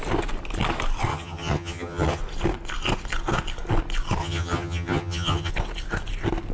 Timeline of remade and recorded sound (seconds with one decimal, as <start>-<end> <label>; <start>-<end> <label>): 0.0-1.1 recorded; 1.1-2.2 remade; 2.2-4.2 recorded; 4.2-5.5 remade; 5.5-6.5 recorded